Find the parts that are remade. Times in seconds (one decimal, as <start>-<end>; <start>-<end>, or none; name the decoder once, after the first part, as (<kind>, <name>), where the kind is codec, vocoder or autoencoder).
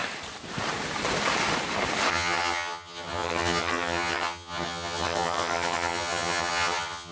2.1-7.1 (vocoder, HiFi-GAN)